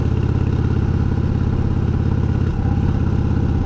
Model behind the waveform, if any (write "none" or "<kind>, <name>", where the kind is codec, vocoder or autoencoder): none